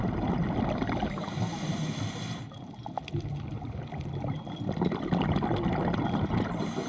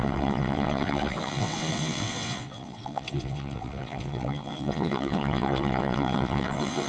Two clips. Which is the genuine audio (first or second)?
first